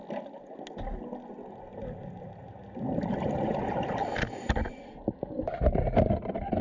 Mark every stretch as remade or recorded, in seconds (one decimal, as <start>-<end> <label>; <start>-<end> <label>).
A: 0.0-6.6 recorded